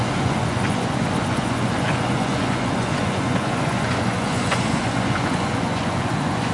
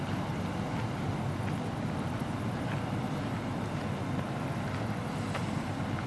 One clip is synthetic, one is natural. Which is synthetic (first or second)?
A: first